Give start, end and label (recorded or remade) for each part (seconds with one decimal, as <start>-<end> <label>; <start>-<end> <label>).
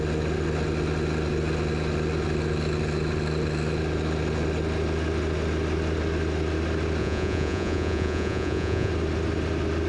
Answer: 0.0-7.0 recorded; 7.0-8.9 remade; 8.9-9.9 recorded